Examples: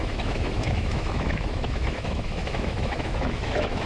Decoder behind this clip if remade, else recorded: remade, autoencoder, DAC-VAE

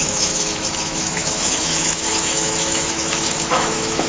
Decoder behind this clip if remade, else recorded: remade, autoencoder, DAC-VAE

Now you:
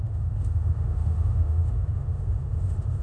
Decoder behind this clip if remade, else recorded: remade, autoencoder, DAC-VAE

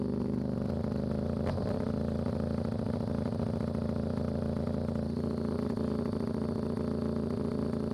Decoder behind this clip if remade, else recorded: recorded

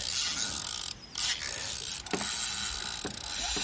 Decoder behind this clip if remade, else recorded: recorded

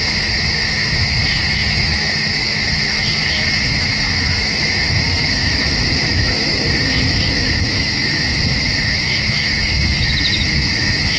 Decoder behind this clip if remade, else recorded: remade, autoencoder, DAC-VAE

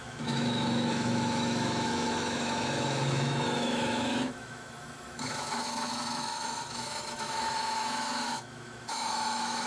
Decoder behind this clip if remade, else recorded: remade, autoencoder, DAC-VAE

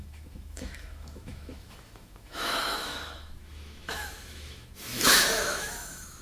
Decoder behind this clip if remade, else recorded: remade, autoencoder, DAC-VAE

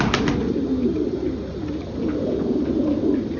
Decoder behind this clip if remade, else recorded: recorded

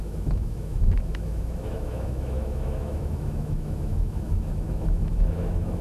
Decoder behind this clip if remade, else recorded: remade, autoencoder, DAC-VAE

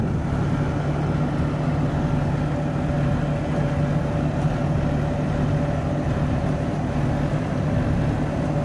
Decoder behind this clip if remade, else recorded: recorded